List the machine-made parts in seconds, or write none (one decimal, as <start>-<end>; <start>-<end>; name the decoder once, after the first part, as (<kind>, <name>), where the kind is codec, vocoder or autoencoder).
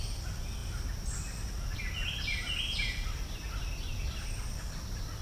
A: none